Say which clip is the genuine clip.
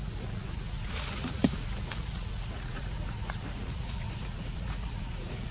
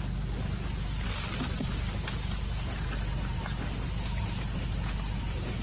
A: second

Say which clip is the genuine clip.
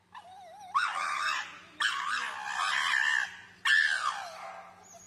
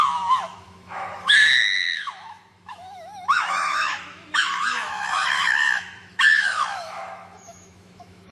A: first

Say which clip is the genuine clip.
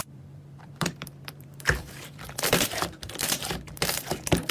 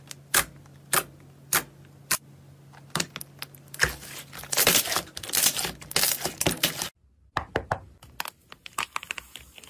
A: second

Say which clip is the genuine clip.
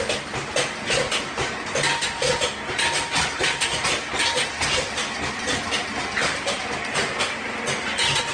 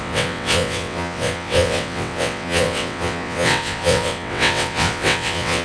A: first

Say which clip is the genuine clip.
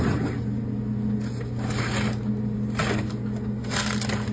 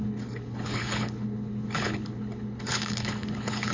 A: first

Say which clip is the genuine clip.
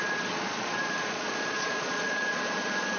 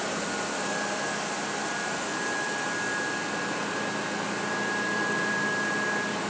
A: second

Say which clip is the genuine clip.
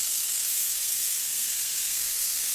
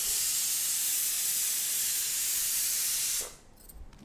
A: second